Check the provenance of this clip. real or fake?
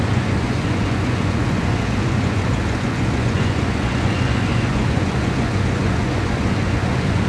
fake